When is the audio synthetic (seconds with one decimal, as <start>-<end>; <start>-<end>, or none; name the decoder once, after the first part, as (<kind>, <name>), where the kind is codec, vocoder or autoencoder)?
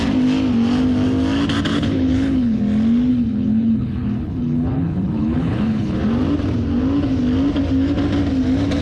1.7-2.6 (codec, HILCodec); 3.1-6.0